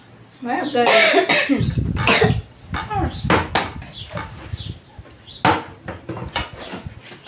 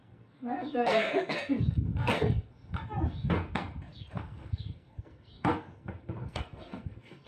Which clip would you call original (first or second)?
first